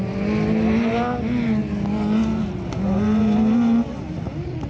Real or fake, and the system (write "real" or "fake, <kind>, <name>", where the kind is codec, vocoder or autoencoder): real